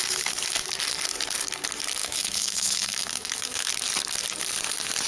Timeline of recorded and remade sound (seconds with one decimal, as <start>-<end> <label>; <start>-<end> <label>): 0.0-2.0 recorded; 2.0-3.7 remade; 3.7-5.1 recorded